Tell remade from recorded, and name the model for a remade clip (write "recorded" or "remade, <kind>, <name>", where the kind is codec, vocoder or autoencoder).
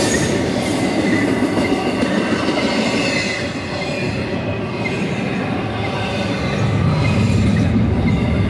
recorded